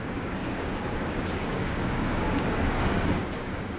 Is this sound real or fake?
fake